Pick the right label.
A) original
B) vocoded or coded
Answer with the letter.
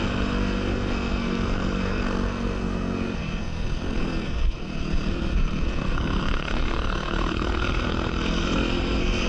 B